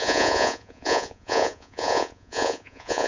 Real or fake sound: fake